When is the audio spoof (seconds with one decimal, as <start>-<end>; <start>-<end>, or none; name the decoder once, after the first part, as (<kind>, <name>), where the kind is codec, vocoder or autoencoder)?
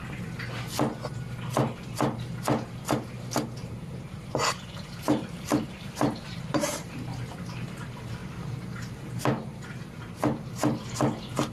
3.6-6.9 (vocoder, BigVGAN v2); 8.2-9.2